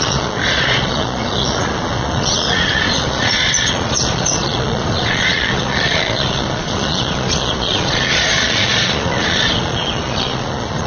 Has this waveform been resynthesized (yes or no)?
yes